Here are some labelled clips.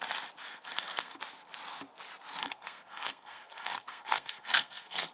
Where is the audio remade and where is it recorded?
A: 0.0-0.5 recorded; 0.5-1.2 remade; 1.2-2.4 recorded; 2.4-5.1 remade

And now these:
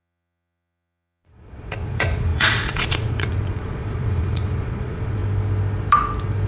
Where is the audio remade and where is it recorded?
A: 0.0-5.2 remade; 5.2-6.5 recorded

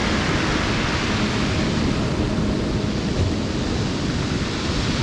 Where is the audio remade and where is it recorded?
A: 0.0-5.0 recorded

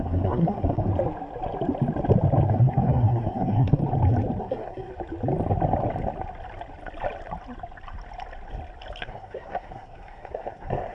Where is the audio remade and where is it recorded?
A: 0.0-0.9 remade; 0.9-2.5 recorded; 2.5-3.8 remade; 3.8-4.4 recorded; 4.4-4.9 remade; 4.9-9.0 recorded; 9.0-10.9 remade

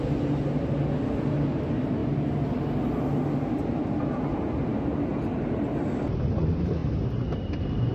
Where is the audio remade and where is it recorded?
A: 0.0-5.1 recorded; 5.1-6.3 remade; 6.3-6.8 recorded; 6.8-7.5 remade; 7.5-7.9 recorded

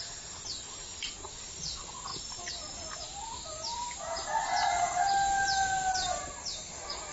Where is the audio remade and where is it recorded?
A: 0.0-2.1 recorded; 2.1-2.6 remade; 2.6-7.1 recorded